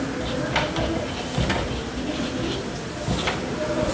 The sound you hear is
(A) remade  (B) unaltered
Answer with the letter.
B